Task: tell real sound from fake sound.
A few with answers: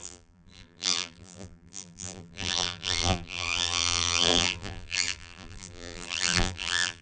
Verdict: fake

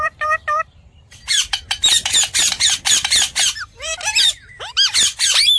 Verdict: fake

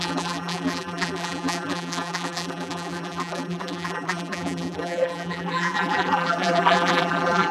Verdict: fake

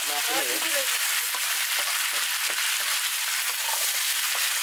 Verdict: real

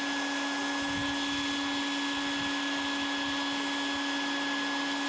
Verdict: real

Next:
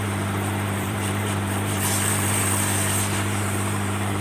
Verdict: fake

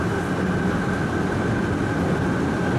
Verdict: real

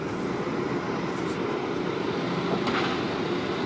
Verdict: fake